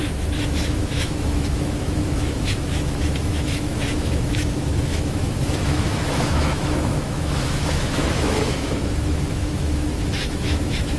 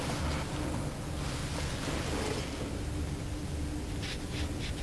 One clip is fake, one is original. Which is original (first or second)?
second